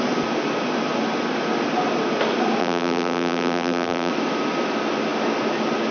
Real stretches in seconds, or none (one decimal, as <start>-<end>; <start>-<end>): 0.0-2.6; 4.1-5.9